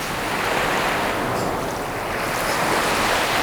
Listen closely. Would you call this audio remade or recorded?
recorded